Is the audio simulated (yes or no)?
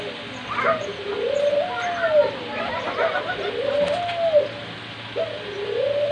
no